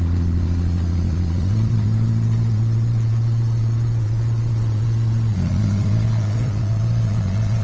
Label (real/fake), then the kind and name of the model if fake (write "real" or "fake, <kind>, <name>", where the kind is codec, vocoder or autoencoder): fake, vocoder, Vocos